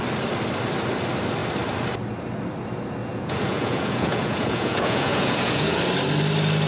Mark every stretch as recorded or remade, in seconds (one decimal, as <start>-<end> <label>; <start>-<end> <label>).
0.0-3.0 recorded; 3.0-5.8 remade; 5.8-6.7 recorded